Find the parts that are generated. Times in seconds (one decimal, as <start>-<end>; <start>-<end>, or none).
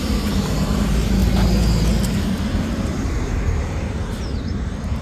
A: 0.0-1.2; 3.1-5.0